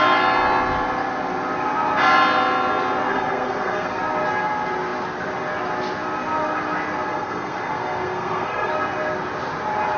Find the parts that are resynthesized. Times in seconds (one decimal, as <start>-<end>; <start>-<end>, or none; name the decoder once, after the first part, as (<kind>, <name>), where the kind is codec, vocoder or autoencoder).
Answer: 3.1-4.0 (codec, SNAC); 7.1-8.7